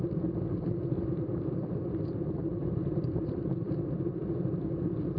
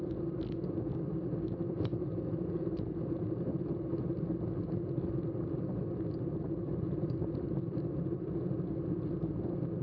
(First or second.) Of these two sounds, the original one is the second